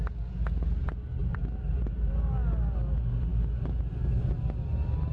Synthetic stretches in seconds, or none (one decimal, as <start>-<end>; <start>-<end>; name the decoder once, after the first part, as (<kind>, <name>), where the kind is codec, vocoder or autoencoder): 1.2-2.1 (vocoder, BigVGAN v2)